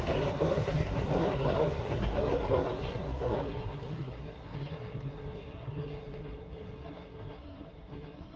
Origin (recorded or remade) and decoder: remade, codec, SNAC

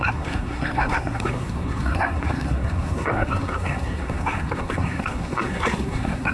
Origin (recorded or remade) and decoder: remade, codec, SNAC